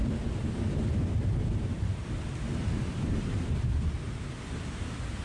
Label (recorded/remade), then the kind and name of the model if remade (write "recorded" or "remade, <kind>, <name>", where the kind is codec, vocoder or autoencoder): remade, vocoder, BigVGAN v2